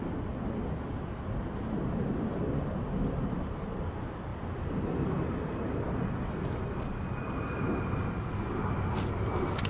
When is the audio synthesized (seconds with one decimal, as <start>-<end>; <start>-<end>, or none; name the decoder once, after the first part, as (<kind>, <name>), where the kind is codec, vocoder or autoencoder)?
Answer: none